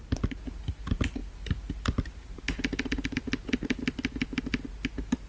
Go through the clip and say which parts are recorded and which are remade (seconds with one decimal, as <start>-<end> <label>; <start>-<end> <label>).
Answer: 0.0-5.3 recorded

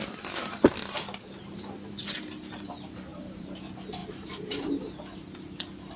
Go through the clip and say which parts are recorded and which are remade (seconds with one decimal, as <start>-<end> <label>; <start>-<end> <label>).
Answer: 0.0-3.1 recorded; 3.1-3.6 remade; 3.6-4.0 recorded; 4.0-5.0 remade; 5.0-6.0 recorded

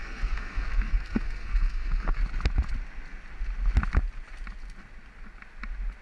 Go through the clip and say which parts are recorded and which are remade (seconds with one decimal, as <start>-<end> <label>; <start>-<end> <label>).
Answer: 0.0-2.2 remade; 2.2-6.0 recorded

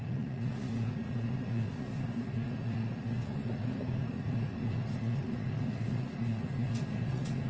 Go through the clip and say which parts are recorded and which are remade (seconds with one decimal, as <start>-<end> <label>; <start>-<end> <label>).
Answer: 0.0-7.5 remade

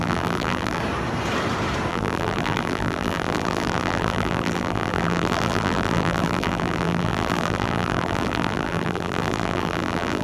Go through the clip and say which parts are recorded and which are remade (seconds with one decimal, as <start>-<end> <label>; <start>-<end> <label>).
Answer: 0.0-0.8 remade; 0.8-1.9 recorded; 1.9-10.2 remade